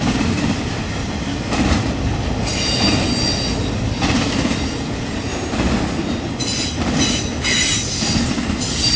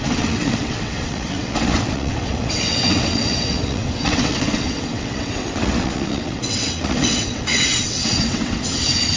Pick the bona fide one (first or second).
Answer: first